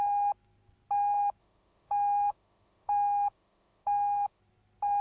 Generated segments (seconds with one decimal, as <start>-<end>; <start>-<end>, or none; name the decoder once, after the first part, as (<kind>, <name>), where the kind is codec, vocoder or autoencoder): 1.4-4.4 (autoencoder, DAC-VAE)

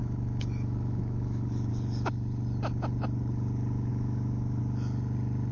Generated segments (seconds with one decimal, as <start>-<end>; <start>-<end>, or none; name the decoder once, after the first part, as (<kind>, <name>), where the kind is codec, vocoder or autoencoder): 0.0-1.7 (autoencoder, DAC-VAE); 3.9-4.6

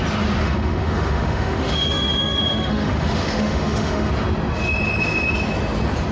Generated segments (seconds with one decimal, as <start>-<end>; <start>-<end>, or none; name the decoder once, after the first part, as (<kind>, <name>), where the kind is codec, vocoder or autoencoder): 0.4-4.1 (autoencoder, DAC-VAE)

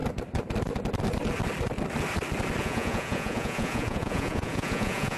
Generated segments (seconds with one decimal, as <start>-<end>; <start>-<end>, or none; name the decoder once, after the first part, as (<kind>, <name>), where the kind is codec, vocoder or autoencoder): 2.6-5.2 (vocoder, Vocos)